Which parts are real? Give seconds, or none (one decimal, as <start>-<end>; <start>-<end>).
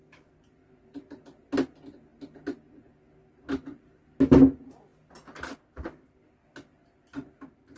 0.0-7.8